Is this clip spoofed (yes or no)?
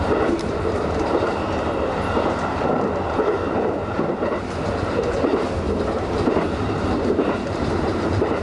yes